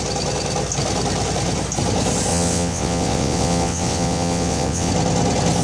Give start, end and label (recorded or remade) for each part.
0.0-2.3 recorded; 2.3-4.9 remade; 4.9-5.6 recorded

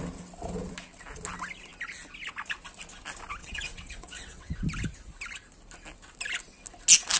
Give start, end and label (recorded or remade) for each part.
0.0-3.4 recorded; 3.4-4.5 remade; 4.5-7.2 recorded

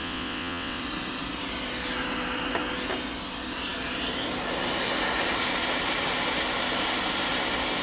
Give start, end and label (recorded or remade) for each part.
0.0-0.8 remade; 0.8-7.8 recorded